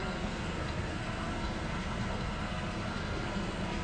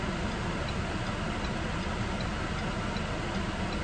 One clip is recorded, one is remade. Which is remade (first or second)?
first